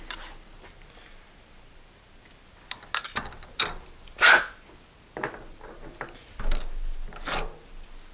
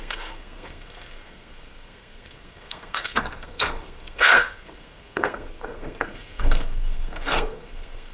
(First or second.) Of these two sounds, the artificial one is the second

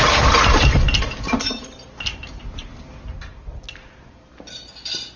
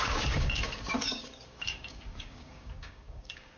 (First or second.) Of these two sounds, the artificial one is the second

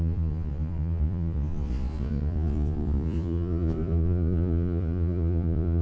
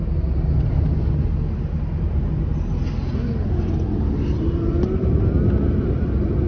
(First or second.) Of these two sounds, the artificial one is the first